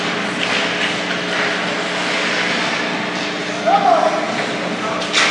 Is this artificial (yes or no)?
no